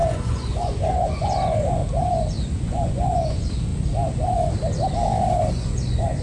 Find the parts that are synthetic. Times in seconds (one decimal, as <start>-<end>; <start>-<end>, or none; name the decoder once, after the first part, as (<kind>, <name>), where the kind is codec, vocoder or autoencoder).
0.0-1.8 (vocoder, Vocos); 2.4-3.7; 5.5-6.2